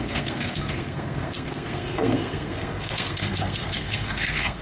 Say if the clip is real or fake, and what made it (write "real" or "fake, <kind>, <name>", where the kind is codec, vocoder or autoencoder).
fake, codec, SNAC